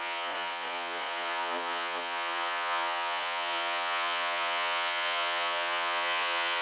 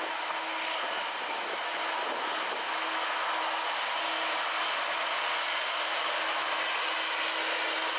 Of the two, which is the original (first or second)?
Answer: second